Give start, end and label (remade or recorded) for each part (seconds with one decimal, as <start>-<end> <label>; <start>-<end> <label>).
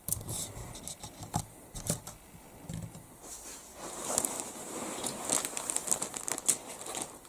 0.0-3.7 recorded; 3.7-5.0 remade; 5.0-7.3 recorded